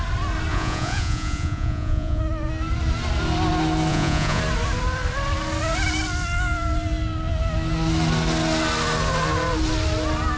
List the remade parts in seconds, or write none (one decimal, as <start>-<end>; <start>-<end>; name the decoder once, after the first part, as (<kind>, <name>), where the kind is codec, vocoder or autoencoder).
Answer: 0.5-2.2 (vocoder, Vocos); 3.9-4.4